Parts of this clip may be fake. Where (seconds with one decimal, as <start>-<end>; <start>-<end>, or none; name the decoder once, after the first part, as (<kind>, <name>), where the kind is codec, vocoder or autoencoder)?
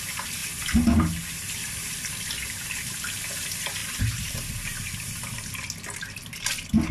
3.8-5.2 (vocoder, BigVGAN v2)